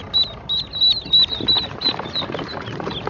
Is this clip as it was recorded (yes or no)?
yes